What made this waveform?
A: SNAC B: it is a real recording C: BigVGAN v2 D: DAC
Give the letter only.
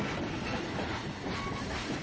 B